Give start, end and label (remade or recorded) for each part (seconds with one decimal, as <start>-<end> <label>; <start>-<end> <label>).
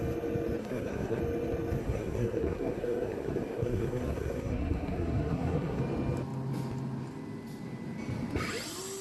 0.0-0.6 recorded; 0.6-1.2 remade; 1.2-1.8 recorded; 1.8-5.8 remade; 5.8-9.0 recorded